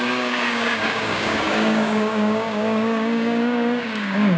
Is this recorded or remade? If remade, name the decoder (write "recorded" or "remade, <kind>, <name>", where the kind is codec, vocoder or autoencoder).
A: remade, codec, DAC